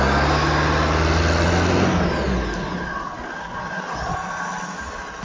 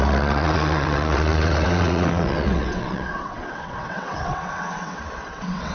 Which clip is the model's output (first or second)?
second